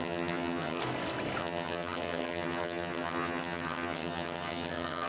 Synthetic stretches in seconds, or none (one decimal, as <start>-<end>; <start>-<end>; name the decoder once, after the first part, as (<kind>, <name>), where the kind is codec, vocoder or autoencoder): 0.0-0.8 (vocoder, HiFi-GAN); 1.4-5.1